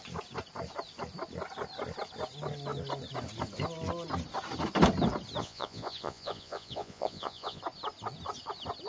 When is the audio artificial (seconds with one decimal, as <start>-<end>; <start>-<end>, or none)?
5.4-7.6